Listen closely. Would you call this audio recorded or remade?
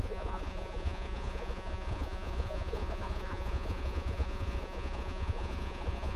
remade